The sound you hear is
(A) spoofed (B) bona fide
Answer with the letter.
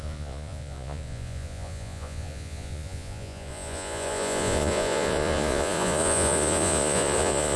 A